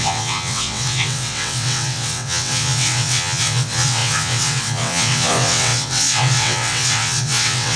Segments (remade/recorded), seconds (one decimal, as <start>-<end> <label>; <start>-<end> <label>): 0.0-7.8 remade